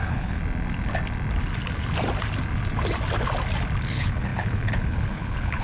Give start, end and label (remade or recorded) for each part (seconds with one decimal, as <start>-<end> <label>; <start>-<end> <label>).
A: 0.0-0.4 remade; 0.4-3.8 recorded; 3.8-5.6 remade